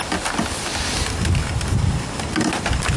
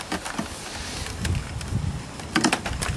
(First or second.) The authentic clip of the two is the first